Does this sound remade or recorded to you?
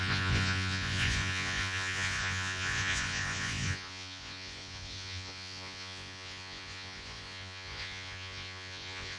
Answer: remade